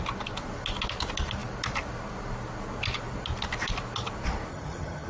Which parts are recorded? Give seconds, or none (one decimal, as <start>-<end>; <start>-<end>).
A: 0.0-4.5